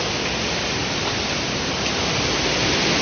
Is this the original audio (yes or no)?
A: yes